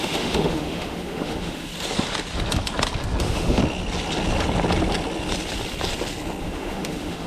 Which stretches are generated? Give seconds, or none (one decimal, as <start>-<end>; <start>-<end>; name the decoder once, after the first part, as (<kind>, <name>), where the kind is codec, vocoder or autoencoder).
0.0-1.7 (autoencoder, DAC-VAE); 3.2-3.6; 6.4-7.3